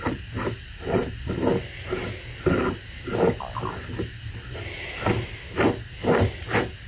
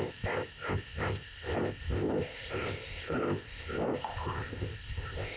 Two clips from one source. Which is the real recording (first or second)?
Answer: first